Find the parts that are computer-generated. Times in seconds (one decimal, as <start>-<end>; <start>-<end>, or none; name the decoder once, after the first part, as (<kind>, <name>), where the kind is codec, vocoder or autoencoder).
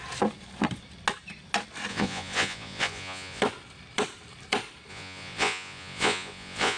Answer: 1.9-3.4 (vocoder, Vocos); 4.9-6.8